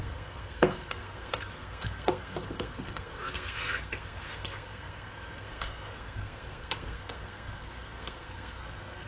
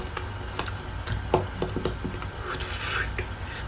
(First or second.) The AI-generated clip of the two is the first